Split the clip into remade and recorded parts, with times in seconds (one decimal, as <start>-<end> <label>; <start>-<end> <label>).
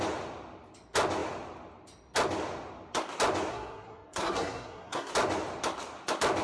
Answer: 0.0-3.5 recorded; 3.5-5.1 remade; 5.1-6.4 recorded